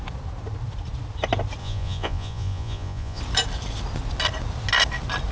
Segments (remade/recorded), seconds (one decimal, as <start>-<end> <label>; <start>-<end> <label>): 0.0-1.6 recorded; 1.6-3.2 remade; 3.2-5.3 recorded